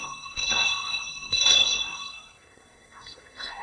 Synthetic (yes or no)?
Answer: yes